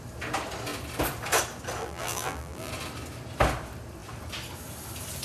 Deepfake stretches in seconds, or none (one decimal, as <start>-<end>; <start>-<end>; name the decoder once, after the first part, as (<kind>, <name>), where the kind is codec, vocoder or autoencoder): 1.8-2.7 (vocoder, BigVGAN v2)